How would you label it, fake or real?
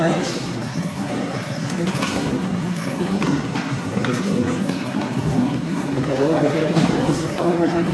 fake